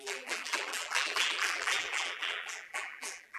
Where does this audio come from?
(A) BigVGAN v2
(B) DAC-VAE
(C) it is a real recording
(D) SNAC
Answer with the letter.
A